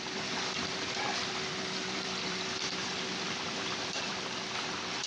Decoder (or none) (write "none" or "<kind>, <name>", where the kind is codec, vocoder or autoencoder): vocoder, BigVGAN v2